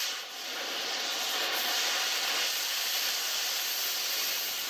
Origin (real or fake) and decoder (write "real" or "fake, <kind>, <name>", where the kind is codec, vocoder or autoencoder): real